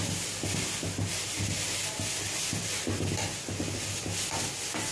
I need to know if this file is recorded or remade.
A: recorded